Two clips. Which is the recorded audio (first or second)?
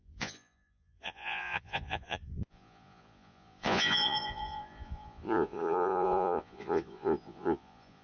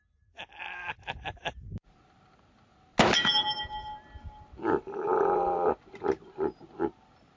second